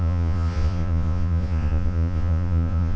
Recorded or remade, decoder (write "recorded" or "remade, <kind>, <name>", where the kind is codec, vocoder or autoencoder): remade, vocoder, Vocos